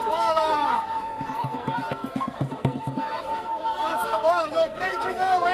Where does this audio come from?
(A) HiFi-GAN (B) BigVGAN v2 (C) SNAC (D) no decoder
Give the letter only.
C